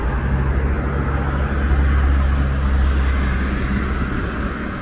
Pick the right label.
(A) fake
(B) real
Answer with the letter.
B